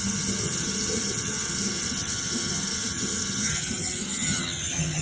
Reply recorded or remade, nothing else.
remade